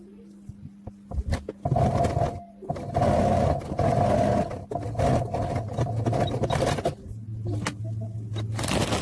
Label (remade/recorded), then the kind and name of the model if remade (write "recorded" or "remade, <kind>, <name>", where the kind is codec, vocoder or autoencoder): recorded